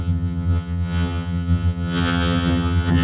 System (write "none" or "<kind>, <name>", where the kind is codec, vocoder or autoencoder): vocoder, HiFi-GAN